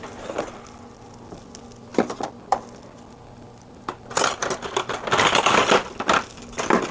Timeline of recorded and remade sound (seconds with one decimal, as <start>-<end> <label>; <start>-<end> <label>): 0.0-6.9 recorded